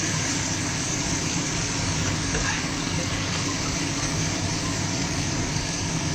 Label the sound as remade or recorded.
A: remade